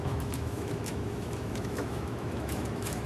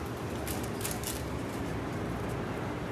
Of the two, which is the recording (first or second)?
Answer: second